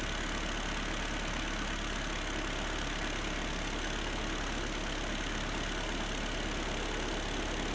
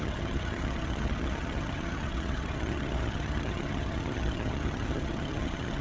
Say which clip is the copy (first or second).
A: second